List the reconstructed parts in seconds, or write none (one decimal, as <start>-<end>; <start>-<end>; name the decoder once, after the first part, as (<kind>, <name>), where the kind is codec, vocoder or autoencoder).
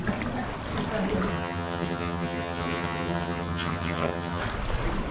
1.3-4.4 (vocoder, HiFi-GAN)